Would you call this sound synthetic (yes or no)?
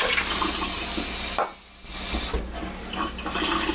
no